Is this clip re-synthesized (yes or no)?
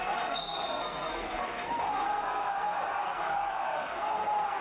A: yes